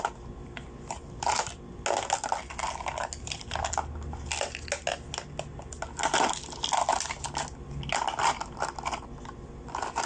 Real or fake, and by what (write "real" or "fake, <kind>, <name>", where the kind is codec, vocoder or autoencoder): real